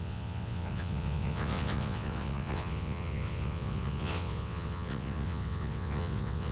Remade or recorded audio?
remade